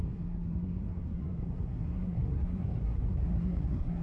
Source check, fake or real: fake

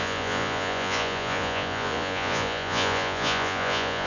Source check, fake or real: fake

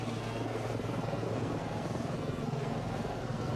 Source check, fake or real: fake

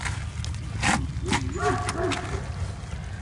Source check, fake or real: real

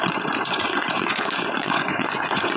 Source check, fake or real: fake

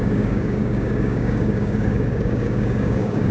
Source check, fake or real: fake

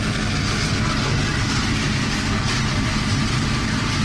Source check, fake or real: real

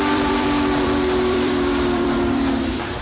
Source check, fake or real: fake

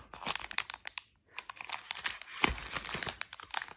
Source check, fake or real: real